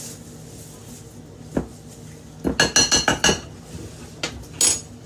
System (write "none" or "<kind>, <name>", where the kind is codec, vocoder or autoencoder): none